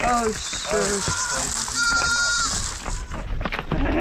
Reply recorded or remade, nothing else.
recorded